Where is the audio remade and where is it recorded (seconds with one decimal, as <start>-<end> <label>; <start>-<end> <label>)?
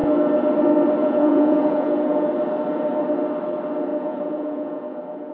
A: 0.0-1.0 recorded; 1.0-2.3 remade; 2.3-3.9 recorded; 3.9-5.3 remade